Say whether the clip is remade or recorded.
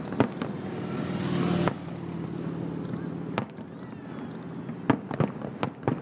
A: recorded